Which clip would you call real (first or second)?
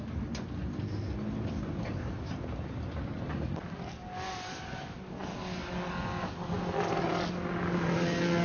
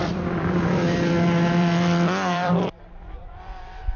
first